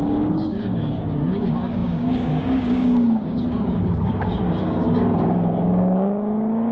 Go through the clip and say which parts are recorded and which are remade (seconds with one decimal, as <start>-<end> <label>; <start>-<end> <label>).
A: 0.0-6.7 remade